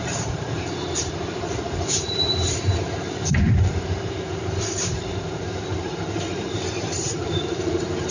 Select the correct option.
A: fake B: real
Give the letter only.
A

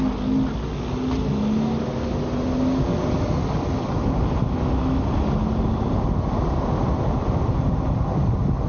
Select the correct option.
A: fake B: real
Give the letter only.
B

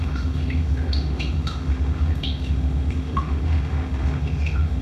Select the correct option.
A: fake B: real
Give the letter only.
A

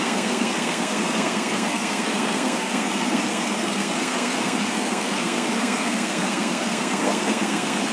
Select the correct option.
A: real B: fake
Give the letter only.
B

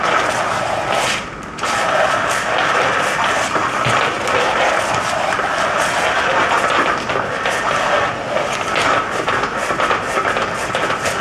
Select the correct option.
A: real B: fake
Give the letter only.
A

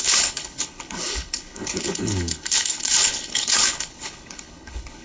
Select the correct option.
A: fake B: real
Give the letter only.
A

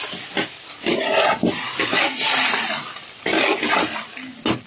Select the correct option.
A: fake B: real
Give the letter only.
B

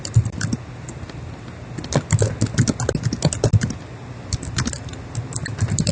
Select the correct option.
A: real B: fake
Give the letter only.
A